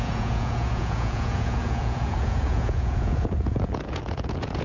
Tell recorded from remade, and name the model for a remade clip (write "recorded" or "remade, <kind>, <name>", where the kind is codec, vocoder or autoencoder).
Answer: remade, vocoder, Vocos